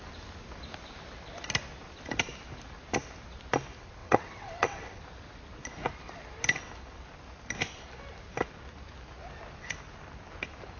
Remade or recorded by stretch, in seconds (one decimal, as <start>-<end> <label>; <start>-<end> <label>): 0.0-4.0 recorded; 4.0-5.0 remade; 5.0-10.8 recorded